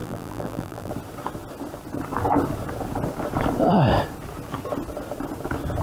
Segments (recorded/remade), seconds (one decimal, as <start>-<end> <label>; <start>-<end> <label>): 0.0-0.9 remade; 0.9-5.8 recorded